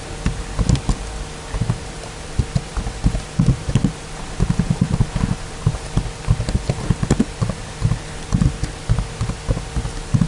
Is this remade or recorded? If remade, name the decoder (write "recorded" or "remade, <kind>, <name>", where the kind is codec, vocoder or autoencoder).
recorded